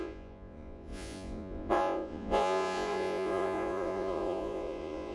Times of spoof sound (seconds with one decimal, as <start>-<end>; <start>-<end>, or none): 0.0-5.1